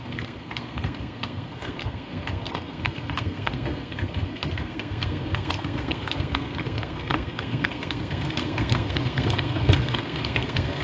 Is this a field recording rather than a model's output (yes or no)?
no